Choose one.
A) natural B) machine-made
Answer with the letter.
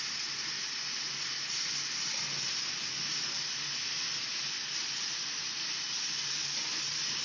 A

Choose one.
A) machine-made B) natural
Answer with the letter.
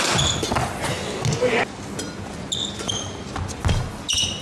B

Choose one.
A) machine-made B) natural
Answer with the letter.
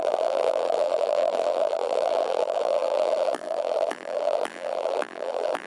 A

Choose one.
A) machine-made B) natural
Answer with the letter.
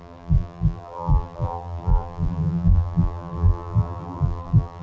A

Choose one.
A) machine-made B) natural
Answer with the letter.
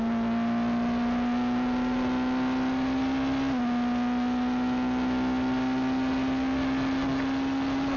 B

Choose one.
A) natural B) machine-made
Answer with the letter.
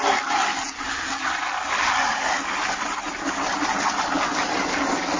A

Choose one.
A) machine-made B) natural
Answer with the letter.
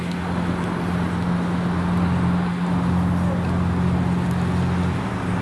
B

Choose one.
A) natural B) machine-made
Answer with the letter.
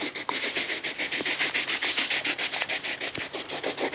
A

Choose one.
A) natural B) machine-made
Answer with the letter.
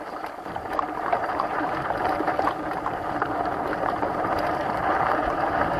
B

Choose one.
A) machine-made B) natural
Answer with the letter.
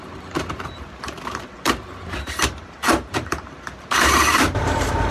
A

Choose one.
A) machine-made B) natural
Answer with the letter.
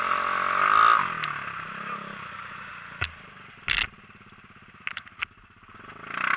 B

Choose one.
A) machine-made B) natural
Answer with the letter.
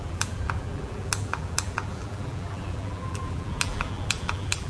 A